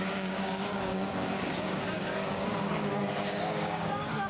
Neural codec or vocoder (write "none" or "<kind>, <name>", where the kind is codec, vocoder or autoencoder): codec, DAC